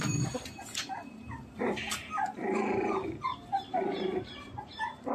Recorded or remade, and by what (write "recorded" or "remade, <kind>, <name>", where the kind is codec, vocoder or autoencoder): remade, vocoder, BigVGAN v2